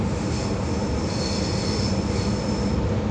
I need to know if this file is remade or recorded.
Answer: recorded